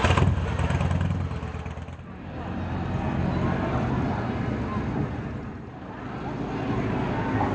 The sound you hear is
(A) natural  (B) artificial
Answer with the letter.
A